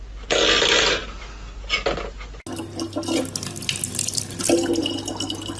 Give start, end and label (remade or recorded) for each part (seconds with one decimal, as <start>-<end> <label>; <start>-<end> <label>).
0.0-5.6 recorded